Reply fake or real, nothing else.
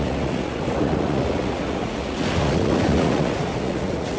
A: fake